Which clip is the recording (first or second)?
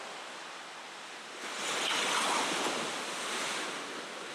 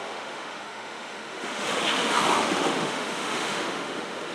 first